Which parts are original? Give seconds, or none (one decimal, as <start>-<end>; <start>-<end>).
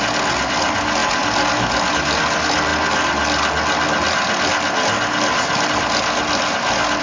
0.0-7.0